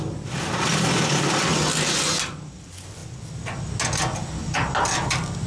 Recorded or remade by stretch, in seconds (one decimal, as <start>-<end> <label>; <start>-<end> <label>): 0.0-5.5 recorded